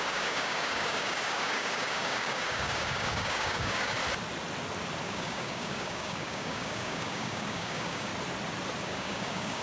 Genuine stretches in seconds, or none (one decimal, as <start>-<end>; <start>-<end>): 4.0-5.0; 8.1-8.8